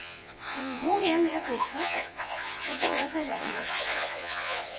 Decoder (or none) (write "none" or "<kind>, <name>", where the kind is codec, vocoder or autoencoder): vocoder, Vocos